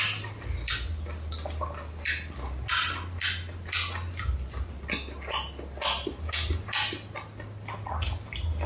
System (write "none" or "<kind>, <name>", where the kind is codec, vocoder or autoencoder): none